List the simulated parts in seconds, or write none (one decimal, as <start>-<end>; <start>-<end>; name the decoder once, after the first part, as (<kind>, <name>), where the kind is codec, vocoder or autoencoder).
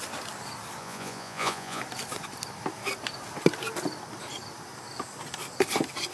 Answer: 0.8-1.8 (vocoder, Vocos)